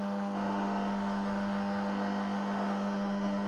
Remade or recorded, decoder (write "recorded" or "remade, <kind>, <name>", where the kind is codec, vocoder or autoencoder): remade, autoencoder, DAC-VAE